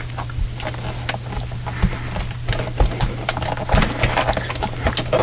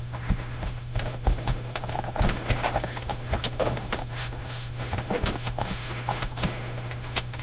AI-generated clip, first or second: second